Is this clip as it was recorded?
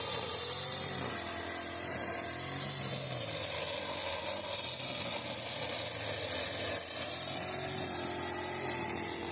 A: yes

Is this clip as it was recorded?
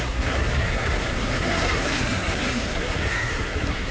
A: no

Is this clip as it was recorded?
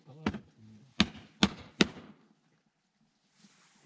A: yes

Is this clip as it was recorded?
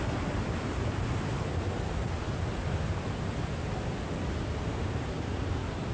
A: yes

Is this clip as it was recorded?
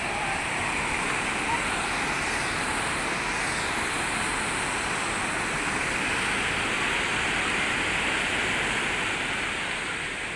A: yes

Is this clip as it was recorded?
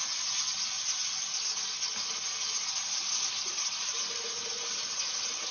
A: yes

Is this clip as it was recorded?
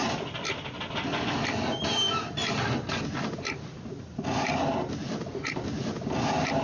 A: yes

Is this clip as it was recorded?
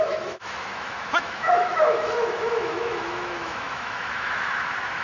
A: no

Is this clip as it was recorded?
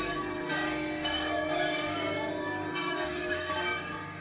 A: no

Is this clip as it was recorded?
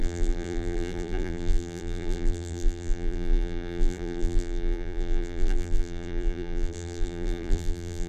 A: no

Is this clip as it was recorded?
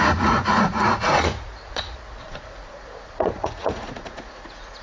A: no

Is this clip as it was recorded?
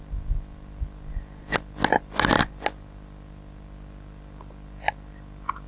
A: yes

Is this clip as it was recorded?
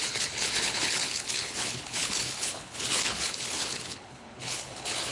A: no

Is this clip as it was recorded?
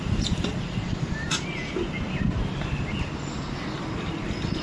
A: yes